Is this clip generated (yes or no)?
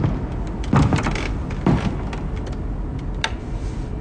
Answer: no